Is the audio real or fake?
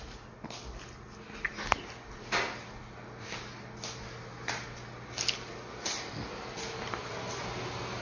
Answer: real